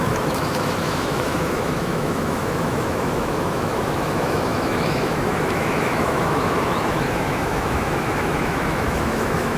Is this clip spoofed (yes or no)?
yes